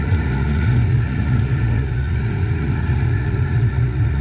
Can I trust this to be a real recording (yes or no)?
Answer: no